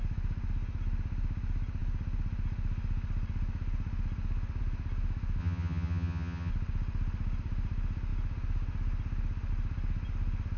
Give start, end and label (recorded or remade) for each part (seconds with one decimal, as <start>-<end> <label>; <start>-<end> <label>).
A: 0.0-5.4 recorded; 5.4-6.5 remade; 6.5-10.6 recorded